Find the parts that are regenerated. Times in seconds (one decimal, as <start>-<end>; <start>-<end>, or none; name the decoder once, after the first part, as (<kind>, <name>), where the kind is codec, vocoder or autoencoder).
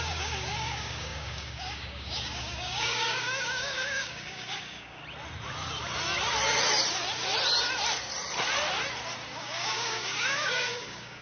0.0-5.0 (codec, DAC); 9.4-11.2